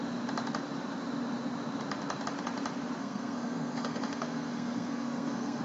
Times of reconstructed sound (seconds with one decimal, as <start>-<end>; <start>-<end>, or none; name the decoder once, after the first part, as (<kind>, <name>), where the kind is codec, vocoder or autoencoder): 3.0-5.6 (codec, SNAC)